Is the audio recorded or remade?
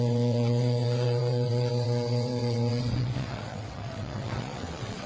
remade